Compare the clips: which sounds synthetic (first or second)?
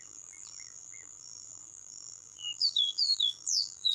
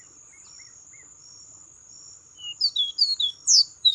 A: first